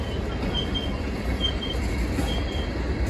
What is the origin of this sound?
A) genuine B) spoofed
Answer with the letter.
A